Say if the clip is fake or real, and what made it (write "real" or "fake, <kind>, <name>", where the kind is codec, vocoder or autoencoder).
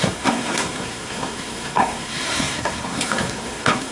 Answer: fake, codec, SNAC